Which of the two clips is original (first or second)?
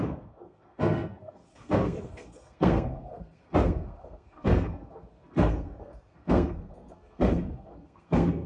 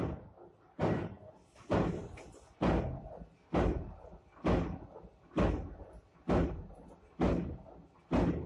second